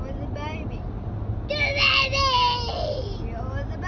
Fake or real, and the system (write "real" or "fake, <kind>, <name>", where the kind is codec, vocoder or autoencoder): real